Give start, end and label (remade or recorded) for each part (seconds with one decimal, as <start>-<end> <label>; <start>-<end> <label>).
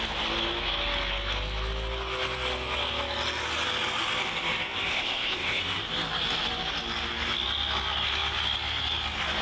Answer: 0.0-4.9 recorded; 4.9-5.6 remade; 5.6-9.4 recorded